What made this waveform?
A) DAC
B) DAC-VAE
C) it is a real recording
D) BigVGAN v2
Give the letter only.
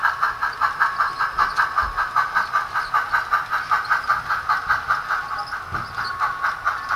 C